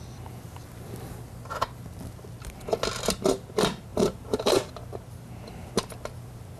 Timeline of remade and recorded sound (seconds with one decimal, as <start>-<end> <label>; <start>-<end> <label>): 0.0-3.9 recorded; 3.9-4.7 remade; 4.7-6.6 recorded